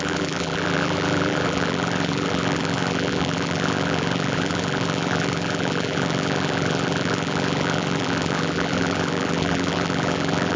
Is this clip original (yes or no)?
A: no